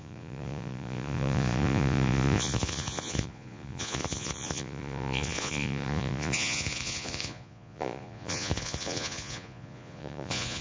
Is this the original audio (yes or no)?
no